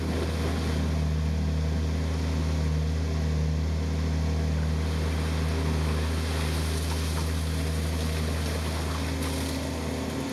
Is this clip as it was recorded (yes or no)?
yes